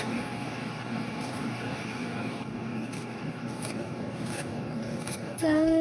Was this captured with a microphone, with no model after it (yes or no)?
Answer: no